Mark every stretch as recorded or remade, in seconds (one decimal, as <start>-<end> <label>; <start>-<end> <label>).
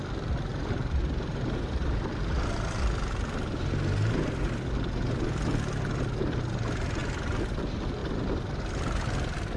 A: 0.0-0.5 recorded; 0.5-1.9 remade; 1.9-8.0 recorded; 8.0-8.6 remade; 8.6-9.6 recorded